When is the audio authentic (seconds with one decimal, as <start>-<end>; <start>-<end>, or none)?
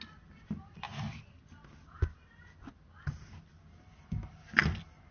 0.0-5.1